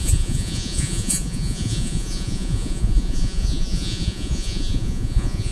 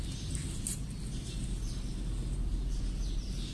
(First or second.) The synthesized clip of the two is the first